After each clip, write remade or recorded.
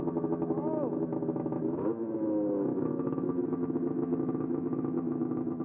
remade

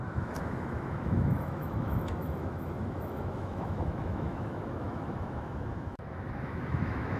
remade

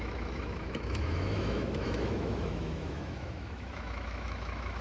remade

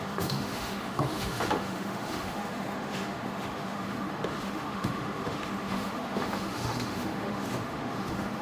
remade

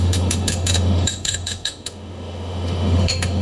remade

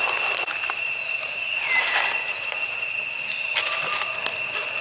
recorded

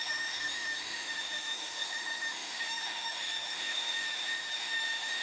remade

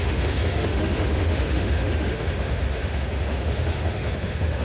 remade